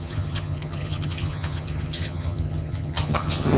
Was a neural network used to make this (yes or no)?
yes